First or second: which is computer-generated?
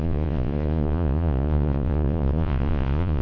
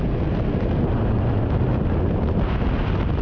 first